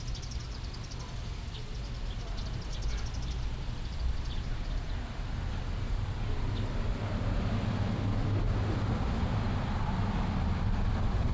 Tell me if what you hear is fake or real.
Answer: real